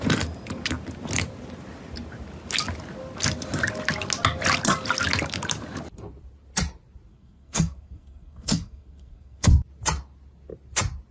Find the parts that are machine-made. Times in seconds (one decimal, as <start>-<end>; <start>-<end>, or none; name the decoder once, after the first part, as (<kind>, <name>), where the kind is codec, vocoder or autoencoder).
7.1-9.5 (codec, SNAC)